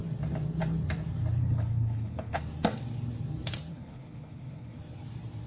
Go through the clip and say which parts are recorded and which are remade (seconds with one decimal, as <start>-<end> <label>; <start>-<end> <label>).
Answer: 0.0-1.4 recorded; 1.4-2.4 remade; 2.4-3.7 recorded; 3.7-4.8 remade; 4.8-5.5 recorded